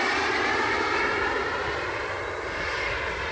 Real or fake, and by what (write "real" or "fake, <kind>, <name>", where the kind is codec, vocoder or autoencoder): real